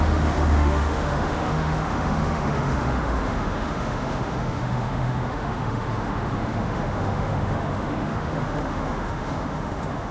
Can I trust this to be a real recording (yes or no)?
no